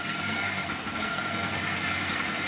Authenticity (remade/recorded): remade